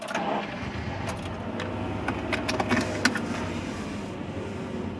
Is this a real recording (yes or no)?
yes